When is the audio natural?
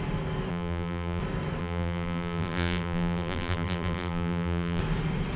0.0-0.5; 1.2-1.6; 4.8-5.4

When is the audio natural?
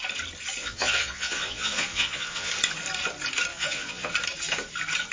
0.0-0.6; 2.5-3.5; 4.1-5.1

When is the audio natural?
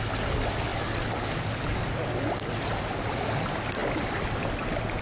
0.0-3.8; 4.3-5.0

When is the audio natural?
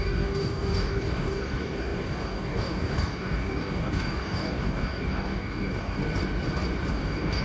6.0-6.9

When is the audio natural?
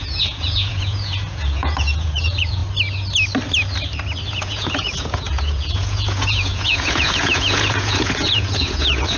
2.6-4.3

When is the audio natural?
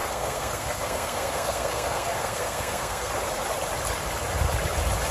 3.1-5.1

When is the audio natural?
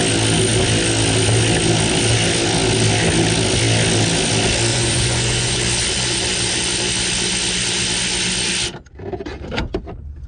0.0-4.7; 5.6-10.3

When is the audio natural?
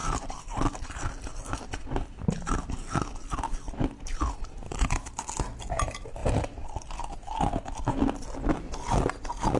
0.0-9.6